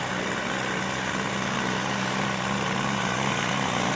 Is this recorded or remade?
recorded